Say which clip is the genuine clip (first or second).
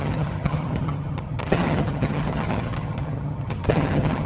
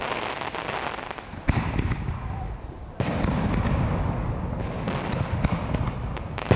second